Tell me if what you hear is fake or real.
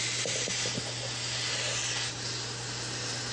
real